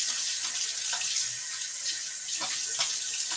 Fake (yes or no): no